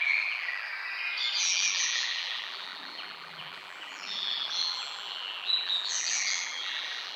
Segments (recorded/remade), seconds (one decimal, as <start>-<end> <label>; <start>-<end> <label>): 0.0-0.7 remade; 0.7-1.4 recorded; 1.4-7.2 remade